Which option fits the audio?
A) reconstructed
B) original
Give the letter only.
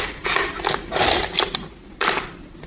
B